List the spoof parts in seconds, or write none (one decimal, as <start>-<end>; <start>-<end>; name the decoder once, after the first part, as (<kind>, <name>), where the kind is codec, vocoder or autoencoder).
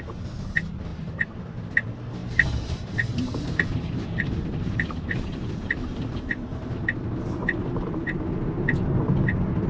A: 0.9-1.4 (vocoder, BigVGAN v2); 2.2-6.7